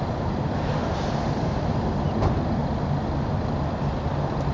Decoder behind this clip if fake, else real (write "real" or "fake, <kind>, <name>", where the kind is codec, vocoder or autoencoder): real